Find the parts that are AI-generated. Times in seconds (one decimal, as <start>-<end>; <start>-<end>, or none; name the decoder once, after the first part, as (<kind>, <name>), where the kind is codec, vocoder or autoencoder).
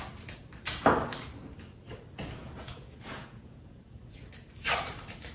2.4-4.0 (vocoder, Vocos)